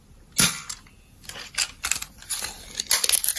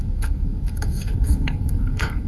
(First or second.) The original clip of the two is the first